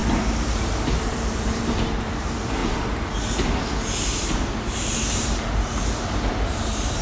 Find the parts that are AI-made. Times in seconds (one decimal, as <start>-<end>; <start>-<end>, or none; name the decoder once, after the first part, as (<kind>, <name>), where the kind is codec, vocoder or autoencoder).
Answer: 0.7-2.6 (vocoder, BigVGAN v2); 4.0-7.0